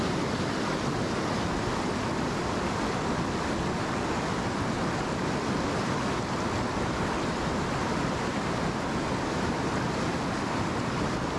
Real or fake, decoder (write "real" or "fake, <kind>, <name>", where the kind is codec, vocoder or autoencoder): real